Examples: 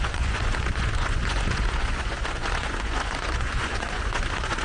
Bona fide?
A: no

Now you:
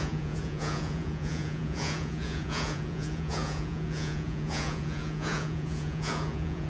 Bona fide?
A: no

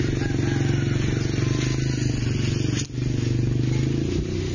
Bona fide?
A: yes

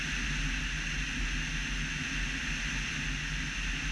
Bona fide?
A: yes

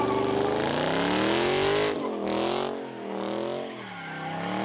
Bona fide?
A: yes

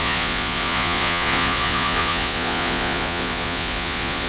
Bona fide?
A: no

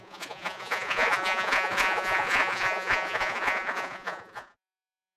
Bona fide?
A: no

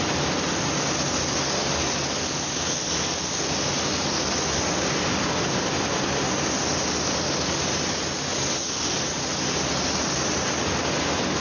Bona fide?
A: yes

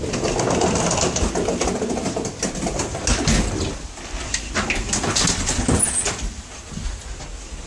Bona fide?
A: yes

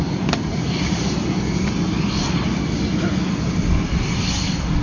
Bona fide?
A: yes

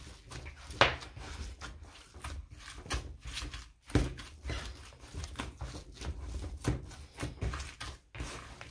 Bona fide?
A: yes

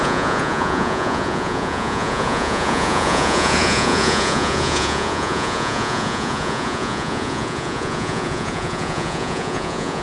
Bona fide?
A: no